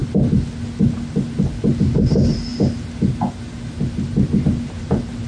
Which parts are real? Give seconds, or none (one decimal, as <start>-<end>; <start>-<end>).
0.0-5.3